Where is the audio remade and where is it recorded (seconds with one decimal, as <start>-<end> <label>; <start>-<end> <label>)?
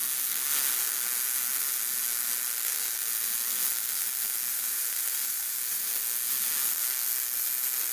0.0-4.5 recorded; 4.5-5.9 remade; 5.9-7.9 recorded